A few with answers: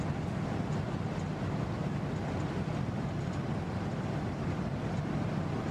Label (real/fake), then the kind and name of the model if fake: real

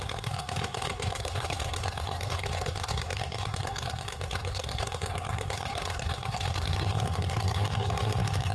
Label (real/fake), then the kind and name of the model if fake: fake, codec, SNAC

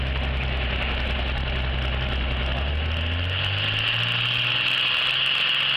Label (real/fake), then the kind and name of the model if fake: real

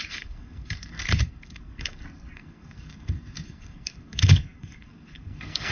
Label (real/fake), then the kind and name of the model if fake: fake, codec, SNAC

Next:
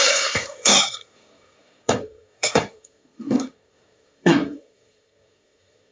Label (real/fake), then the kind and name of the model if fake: fake, codec, SNAC